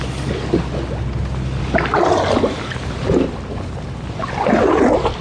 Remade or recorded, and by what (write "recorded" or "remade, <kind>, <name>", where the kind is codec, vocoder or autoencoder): recorded